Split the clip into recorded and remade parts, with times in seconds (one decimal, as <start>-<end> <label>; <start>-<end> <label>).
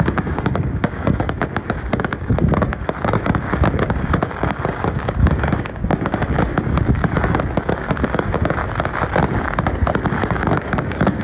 0.0-8.6 remade; 8.6-10.1 recorded; 10.1-11.2 remade